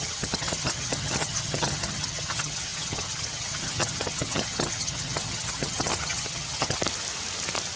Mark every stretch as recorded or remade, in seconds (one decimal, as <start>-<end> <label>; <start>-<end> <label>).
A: 0.0-6.8 remade; 6.8-7.8 recorded